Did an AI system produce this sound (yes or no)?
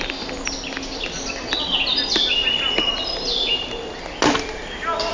no